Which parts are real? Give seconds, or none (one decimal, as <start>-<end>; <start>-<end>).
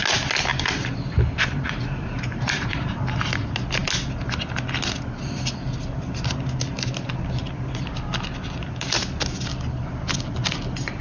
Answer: 0.0-0.5; 3.0-11.0